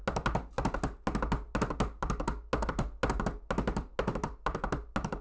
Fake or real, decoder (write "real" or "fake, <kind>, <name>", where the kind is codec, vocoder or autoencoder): real